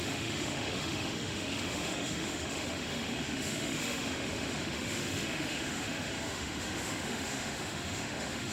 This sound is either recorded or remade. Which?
remade